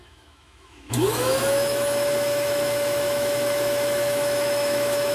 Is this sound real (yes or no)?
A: no